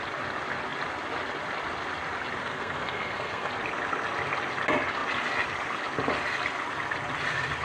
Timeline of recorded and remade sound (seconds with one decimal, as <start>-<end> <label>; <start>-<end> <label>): 0.0-2.4 recorded; 2.4-3.5 remade; 3.5-7.6 recorded